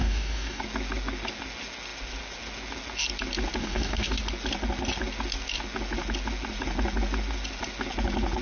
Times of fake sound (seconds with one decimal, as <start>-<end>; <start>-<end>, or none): 0.0-0.6; 3.6-4.2